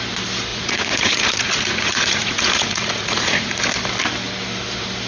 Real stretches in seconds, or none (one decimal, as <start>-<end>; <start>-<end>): 0.0-0.5; 3.6-5.1